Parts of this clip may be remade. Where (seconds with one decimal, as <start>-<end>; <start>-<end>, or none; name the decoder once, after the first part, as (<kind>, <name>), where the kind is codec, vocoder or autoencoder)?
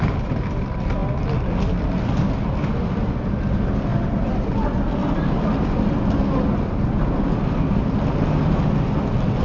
none